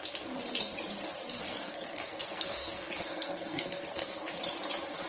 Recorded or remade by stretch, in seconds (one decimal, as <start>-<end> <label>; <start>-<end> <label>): 0.0-1.4 recorded; 1.4-4.3 remade; 4.3-5.1 recorded

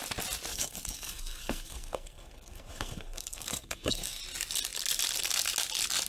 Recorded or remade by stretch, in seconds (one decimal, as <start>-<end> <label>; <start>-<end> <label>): 0.0-0.5 recorded; 0.5-4.2 remade; 4.2-6.1 recorded

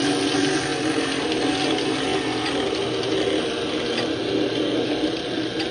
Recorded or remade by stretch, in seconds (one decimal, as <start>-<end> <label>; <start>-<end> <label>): 0.0-5.7 recorded

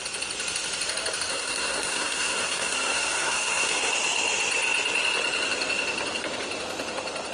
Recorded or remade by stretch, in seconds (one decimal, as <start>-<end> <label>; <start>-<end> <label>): 0.0-1.3 recorded; 1.3-3.9 remade; 3.9-7.3 recorded

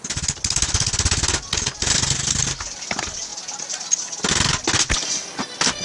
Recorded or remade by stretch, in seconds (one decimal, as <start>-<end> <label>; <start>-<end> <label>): 0.0-5.8 recorded

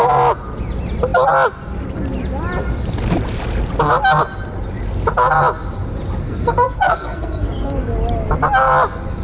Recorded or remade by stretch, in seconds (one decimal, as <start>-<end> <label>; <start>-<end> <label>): 0.0-6.2 recorded; 6.2-7.8 remade; 7.8-9.2 recorded